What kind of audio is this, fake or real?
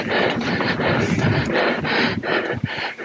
real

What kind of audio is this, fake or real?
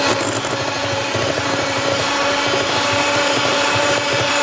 fake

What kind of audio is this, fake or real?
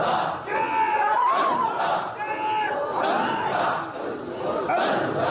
real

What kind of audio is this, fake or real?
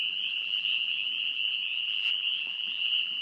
fake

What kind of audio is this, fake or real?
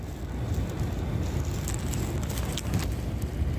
real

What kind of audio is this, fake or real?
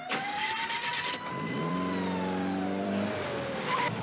fake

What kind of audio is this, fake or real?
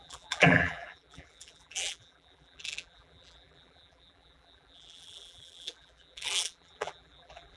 fake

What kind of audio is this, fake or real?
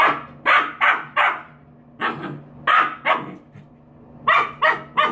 real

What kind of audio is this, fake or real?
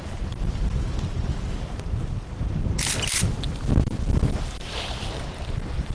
fake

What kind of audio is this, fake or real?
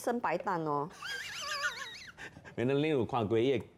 real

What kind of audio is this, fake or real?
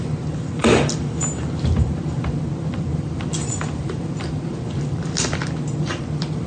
fake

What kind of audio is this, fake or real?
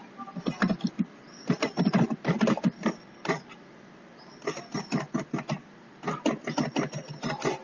real